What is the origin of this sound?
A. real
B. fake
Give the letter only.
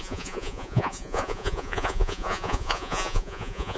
B